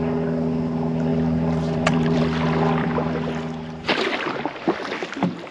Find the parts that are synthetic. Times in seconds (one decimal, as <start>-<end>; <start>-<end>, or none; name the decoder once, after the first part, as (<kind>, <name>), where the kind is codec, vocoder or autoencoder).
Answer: 1.1-3.6 (vocoder, BigVGAN v2)